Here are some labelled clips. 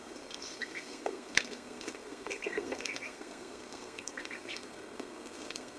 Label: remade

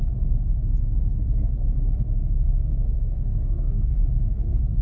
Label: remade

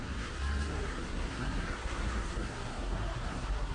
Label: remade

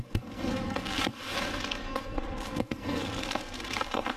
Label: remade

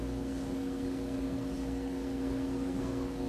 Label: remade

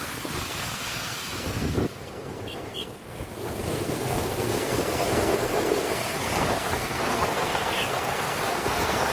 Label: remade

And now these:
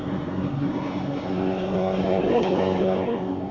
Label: remade